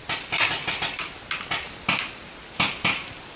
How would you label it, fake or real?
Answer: real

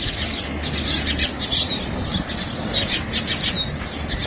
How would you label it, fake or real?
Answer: real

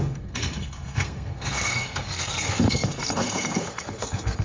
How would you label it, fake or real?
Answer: fake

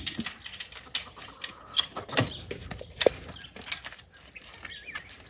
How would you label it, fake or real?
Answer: real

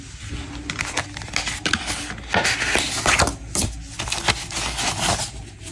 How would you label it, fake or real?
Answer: real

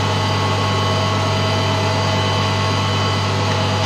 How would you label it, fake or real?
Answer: real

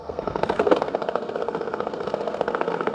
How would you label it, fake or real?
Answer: fake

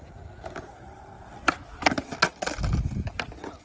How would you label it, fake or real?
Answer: real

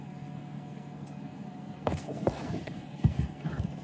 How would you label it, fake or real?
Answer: fake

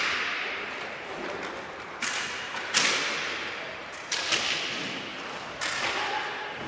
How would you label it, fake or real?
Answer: real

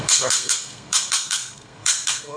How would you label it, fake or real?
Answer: fake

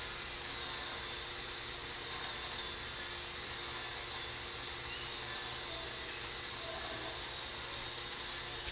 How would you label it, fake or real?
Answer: real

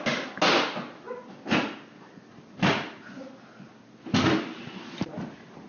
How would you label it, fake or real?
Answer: real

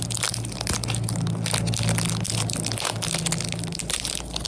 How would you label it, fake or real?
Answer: real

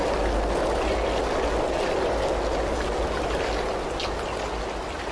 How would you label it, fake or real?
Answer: real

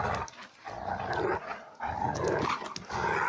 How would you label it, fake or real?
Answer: real